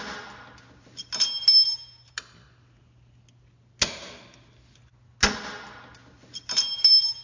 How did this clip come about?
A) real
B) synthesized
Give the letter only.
A